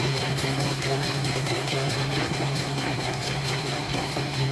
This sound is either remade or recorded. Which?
remade